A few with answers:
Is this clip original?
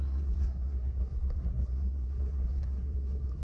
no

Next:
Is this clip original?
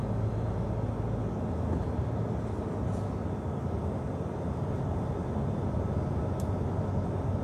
yes